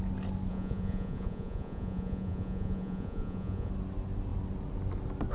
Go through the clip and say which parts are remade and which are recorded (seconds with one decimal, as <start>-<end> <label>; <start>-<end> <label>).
0.0-0.5 recorded; 0.5-3.7 remade; 3.7-5.3 recorded